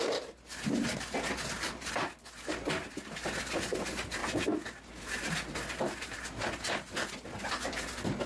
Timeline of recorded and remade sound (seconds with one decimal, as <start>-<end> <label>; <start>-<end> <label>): 0.0-8.3 recorded

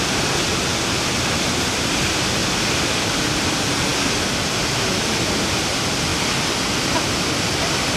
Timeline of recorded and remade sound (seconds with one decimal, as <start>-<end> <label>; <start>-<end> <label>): 0.0-2.4 remade; 2.4-3.0 recorded; 3.0-3.9 remade; 3.9-4.6 recorded; 4.6-6.1 remade; 6.1-6.8 recorded; 6.8-8.0 remade

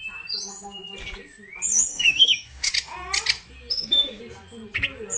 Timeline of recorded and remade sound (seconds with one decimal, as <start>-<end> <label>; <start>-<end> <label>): 0.0-1.9 recorded; 1.9-2.7 remade; 2.7-3.7 recorded; 3.7-4.2 remade; 4.2-5.2 recorded

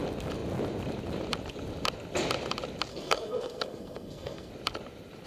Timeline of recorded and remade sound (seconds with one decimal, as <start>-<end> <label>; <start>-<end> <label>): 0.0-2.9 recorded; 2.9-4.5 remade; 4.5-5.3 recorded

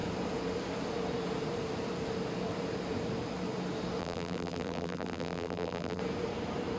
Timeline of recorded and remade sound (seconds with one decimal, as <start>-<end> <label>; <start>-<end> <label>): 0.0-4.0 recorded; 4.0-6.0 remade; 6.0-6.8 recorded

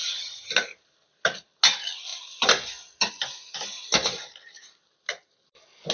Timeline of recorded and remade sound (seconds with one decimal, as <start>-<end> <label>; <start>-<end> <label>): 0.0-0.5 remade; 0.5-5.9 recorded